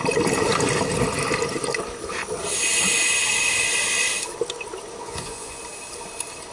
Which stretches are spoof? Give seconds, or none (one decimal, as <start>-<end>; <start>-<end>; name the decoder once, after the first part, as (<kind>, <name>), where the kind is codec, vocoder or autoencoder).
5.0-5.6 (vocoder, Vocos)